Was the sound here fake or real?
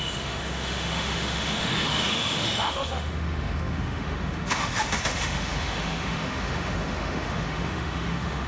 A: fake